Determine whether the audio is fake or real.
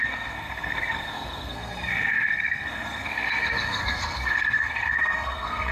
fake